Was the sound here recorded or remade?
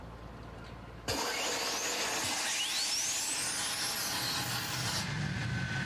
recorded